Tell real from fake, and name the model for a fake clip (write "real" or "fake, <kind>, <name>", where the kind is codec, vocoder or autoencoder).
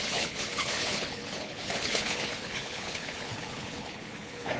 fake, codec, HILCodec